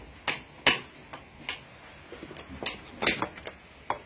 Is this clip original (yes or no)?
yes